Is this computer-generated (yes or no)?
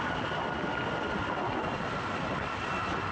no